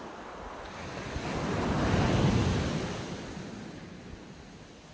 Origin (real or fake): real